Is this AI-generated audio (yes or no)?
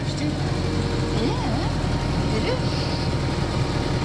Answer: no